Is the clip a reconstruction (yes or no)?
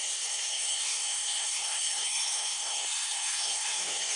yes